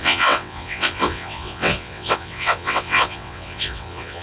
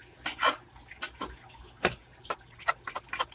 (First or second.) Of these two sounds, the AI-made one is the first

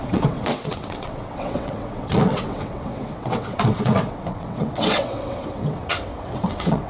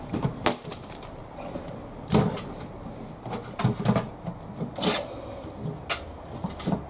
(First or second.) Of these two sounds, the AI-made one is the first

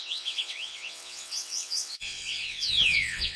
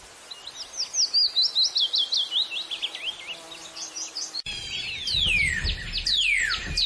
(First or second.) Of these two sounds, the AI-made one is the first